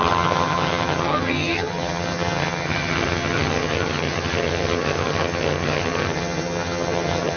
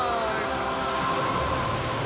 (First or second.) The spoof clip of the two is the first